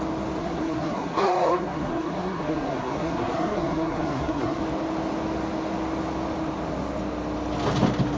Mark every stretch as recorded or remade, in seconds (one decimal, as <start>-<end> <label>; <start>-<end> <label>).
0.0-0.4 recorded; 0.4-4.6 remade; 4.6-8.2 recorded